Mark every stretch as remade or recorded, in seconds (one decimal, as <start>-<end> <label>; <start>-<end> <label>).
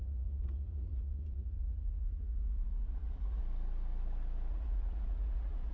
0.0-3.4 remade; 3.4-4.5 recorded; 4.5-5.7 remade